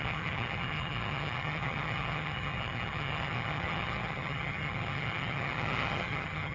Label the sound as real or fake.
fake